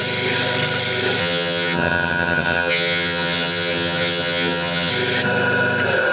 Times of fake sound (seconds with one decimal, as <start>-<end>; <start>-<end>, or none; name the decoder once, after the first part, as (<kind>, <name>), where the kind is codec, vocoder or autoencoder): 1.2-4.9 (vocoder, HiFi-GAN)